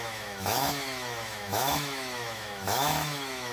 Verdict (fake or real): fake